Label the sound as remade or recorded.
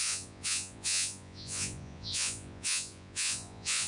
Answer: remade